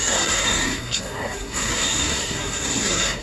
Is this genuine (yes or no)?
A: no